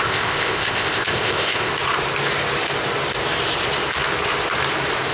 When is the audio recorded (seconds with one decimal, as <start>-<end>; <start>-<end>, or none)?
1.7-5.1